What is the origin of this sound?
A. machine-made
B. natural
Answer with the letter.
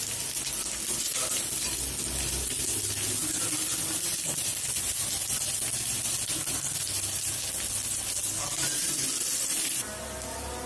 B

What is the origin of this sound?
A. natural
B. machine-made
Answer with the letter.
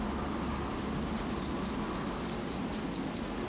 A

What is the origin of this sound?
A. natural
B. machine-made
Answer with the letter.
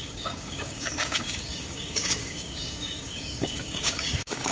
B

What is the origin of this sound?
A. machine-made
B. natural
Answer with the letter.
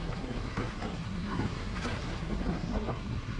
A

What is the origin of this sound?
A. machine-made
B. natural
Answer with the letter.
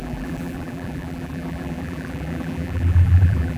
A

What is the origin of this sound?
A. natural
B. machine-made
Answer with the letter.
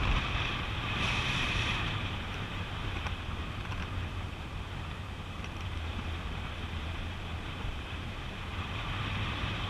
B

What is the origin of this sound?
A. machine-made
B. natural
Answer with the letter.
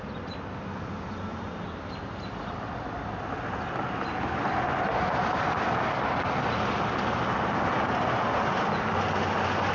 B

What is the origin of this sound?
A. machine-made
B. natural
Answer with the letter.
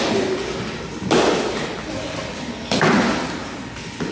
B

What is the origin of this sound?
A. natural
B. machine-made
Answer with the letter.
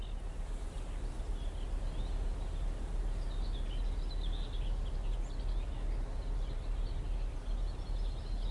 A